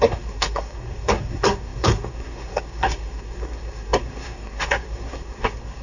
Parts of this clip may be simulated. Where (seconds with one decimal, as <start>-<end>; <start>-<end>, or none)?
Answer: 0.0-5.8